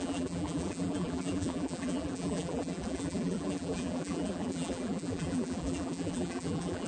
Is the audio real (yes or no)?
no